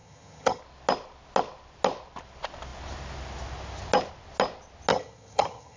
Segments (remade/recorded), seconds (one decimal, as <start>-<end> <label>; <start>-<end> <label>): 0.0-0.6 remade; 0.6-4.9 recorded; 4.9-5.8 remade

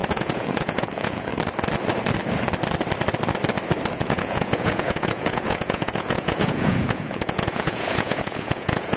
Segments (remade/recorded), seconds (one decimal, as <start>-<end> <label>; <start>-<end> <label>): 0.0-1.3 remade; 1.3-3.9 recorded; 3.9-9.0 remade

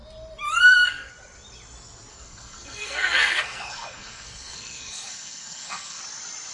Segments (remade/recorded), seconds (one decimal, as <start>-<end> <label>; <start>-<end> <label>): 0.0-0.5 recorded; 0.5-1.1 remade; 1.1-2.1 recorded; 2.1-6.0 remade; 6.0-6.5 recorded

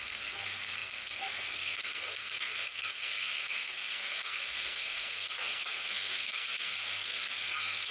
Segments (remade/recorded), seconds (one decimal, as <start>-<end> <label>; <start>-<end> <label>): 0.0-7.9 remade

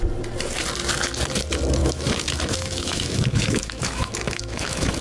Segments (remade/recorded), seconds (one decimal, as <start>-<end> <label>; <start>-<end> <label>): 0.0-1.8 recorded; 1.8-5.0 remade